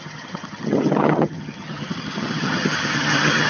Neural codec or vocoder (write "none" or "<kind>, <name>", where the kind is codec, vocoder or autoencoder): vocoder, HiFi-GAN